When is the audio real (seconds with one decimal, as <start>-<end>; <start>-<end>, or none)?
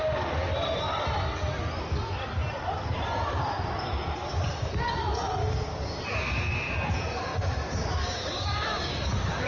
0.0-5.4; 6.0-7.3